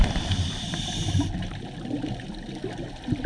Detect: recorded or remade recorded